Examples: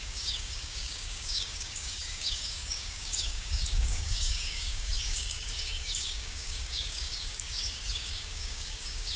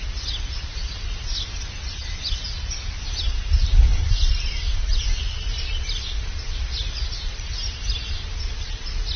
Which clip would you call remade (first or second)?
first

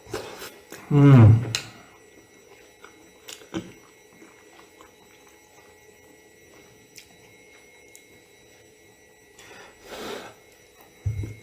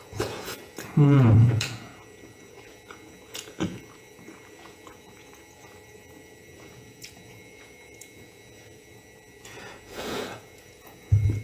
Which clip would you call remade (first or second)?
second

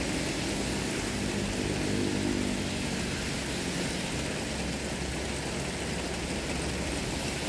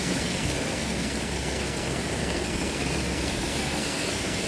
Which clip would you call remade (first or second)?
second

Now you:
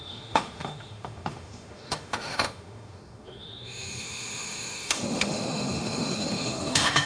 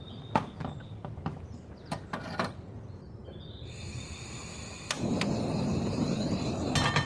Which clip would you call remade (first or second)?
first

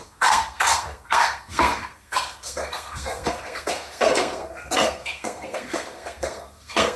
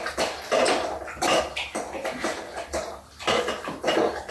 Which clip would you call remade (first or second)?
first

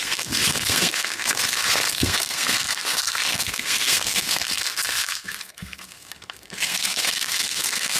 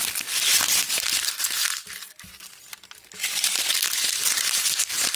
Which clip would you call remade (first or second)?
first